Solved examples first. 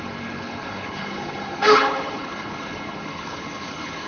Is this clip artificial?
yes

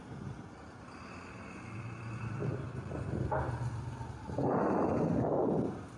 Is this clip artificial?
no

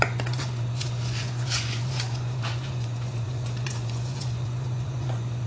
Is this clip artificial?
yes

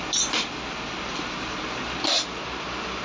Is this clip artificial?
no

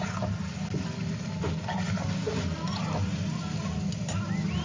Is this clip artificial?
no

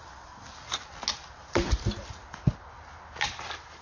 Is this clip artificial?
no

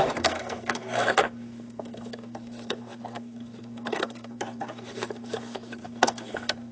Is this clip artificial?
yes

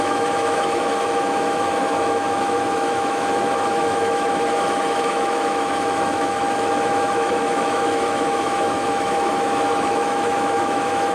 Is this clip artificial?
yes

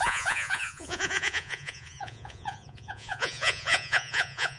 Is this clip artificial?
yes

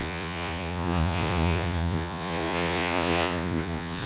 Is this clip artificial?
yes